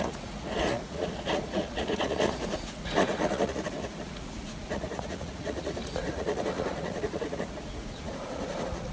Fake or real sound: fake